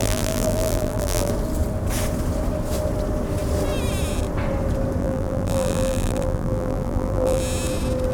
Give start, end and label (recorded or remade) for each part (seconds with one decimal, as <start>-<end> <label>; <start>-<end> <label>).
0.0-1.3 remade; 1.3-5.0 recorded; 5.0-7.4 remade; 7.4-8.1 recorded